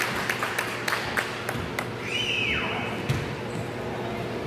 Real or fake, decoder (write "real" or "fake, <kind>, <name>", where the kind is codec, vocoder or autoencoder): real